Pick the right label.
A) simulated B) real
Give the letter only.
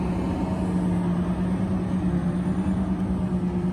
B